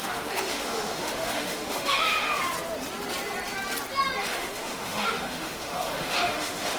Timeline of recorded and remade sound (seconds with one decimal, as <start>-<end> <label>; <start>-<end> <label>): 0.0-2.4 remade; 2.4-4.2 recorded; 4.2-6.8 remade

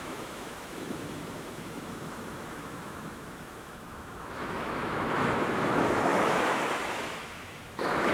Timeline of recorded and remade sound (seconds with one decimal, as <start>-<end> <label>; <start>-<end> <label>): 0.0-8.1 remade

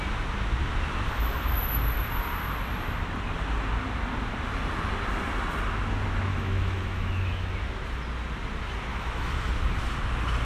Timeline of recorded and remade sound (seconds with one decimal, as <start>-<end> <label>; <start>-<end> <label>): 0.0-6.3 recorded; 6.3-7.5 remade; 7.5-8.9 recorded; 8.9-9.5 remade; 9.5-10.4 recorded

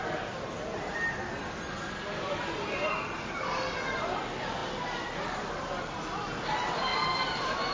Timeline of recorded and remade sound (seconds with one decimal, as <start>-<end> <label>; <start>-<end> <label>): 0.0-7.7 recorded

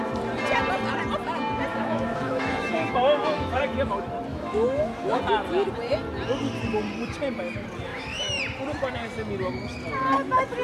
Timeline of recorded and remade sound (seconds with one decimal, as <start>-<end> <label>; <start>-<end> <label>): 0.0-1.7 recorded; 1.7-3.6 remade; 3.6-4.3 recorded; 4.3-5.2 remade; 5.2-7.9 recorded; 7.9-8.4 remade; 8.4-10.6 recorded

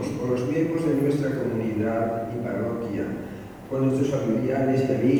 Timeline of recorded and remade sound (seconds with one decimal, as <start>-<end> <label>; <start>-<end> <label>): 0.0-5.2 recorded

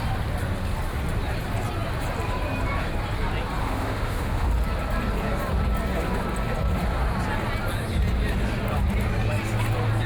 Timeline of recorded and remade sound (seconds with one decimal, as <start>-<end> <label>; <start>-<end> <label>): 0.0-3.6 recorded; 3.6-4.5 remade; 4.5-10.1 recorded